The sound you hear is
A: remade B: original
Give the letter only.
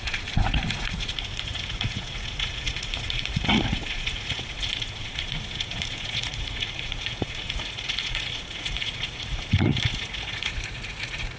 A